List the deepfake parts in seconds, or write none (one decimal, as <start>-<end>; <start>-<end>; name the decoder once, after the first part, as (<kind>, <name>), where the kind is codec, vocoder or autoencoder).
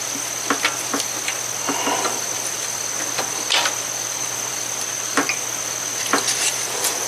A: none